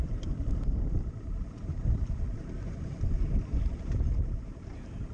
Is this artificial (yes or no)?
yes